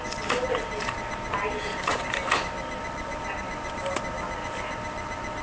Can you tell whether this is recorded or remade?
recorded